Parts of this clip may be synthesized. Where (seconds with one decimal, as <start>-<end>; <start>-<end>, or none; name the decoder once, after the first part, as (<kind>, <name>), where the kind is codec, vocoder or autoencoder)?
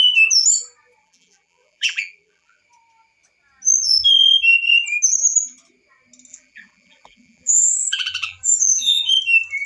1.0-2.6 (vocoder, BigVGAN v2); 6.3-9.1